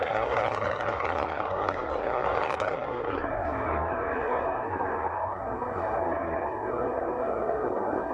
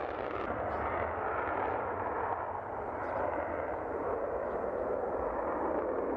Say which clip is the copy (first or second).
first